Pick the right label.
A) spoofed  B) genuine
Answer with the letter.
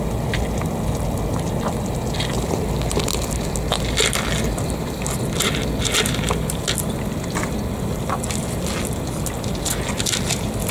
B